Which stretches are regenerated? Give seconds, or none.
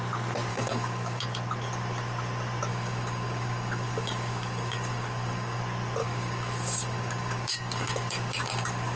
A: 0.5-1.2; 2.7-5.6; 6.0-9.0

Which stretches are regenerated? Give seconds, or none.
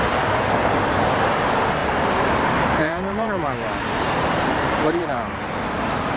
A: 1.8-5.5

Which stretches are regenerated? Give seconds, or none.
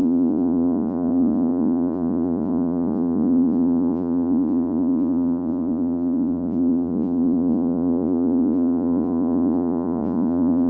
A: 0.0-10.7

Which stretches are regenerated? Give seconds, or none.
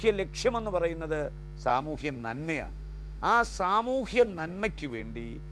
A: 1.7-5.0